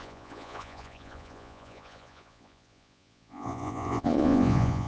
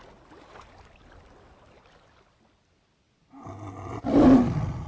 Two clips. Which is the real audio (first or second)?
second